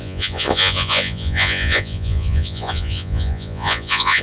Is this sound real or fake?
fake